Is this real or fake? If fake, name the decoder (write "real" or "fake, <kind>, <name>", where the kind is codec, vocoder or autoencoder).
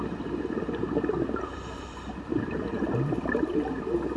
fake, vocoder, BigVGAN v2